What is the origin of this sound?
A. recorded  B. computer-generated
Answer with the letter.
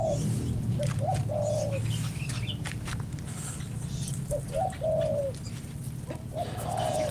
A